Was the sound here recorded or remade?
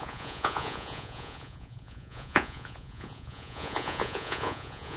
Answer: remade